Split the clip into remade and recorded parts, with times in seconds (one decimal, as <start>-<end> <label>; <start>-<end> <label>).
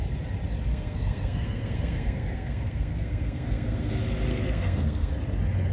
0.0-0.7 recorded; 0.7-3.9 remade; 3.9-4.3 recorded; 4.3-5.1 remade; 5.1-5.7 recorded